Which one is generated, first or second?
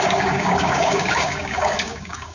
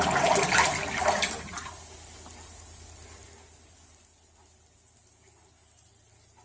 first